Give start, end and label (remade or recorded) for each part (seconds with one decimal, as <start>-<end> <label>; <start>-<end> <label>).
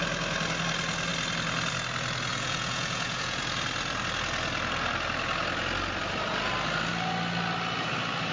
0.0-2.3 recorded; 2.3-3.4 remade; 3.4-8.3 recorded